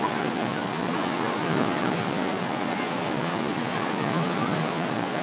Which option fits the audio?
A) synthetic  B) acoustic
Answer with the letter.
A